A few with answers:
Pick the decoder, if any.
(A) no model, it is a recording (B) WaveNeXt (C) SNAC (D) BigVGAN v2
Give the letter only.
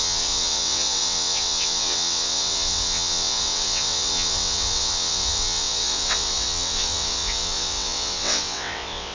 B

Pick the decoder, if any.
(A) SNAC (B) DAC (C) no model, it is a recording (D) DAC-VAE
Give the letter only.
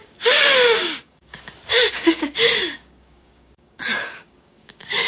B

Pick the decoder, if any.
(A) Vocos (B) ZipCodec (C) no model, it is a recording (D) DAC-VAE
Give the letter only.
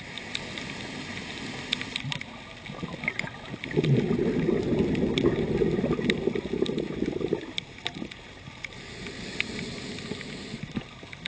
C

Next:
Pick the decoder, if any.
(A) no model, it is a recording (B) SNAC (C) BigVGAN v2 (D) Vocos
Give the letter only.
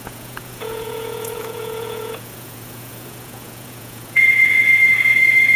D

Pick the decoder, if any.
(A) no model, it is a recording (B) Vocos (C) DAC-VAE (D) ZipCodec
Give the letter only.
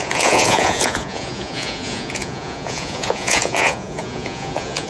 B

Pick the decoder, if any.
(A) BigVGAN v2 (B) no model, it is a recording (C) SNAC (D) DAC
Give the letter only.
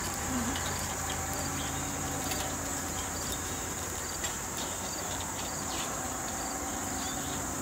A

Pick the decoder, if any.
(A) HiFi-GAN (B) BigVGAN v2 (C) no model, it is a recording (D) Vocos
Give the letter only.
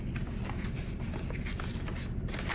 C